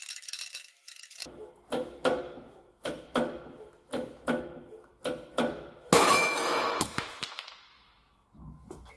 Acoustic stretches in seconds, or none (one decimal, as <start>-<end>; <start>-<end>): 4.9-5.5